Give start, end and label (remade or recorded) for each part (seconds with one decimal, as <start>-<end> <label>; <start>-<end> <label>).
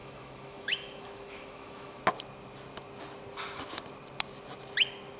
0.0-2.0 remade; 2.0-5.2 recorded